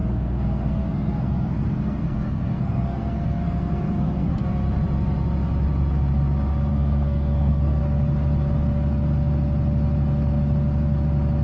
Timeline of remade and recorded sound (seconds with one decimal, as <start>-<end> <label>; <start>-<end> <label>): 0.0-4.4 remade; 4.4-6.7 recorded; 6.7-7.8 remade; 7.8-11.4 recorded